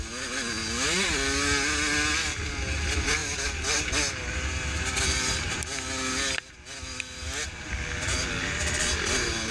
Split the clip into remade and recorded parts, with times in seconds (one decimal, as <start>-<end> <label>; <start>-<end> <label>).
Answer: 0.0-9.5 recorded

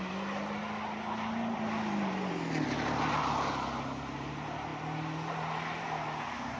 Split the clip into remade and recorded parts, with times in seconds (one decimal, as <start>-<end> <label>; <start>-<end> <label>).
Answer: 0.0-6.6 recorded

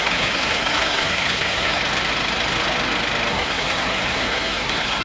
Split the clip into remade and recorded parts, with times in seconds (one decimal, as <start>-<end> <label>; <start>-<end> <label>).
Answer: 0.0-1.8 remade; 1.8-3.3 recorded; 3.3-5.0 remade